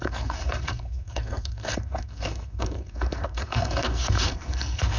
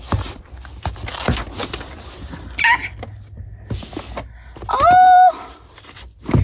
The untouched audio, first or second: second